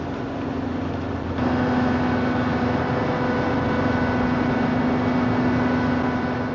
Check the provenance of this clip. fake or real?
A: real